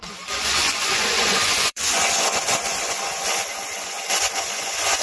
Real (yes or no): no